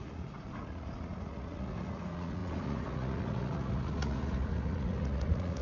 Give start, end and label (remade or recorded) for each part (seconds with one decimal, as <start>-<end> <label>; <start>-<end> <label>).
0.0-5.6 remade